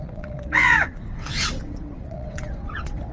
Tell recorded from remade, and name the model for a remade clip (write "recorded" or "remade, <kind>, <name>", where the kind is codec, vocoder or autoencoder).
remade, vocoder, WaveNeXt